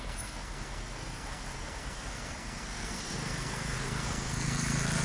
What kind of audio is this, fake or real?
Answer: fake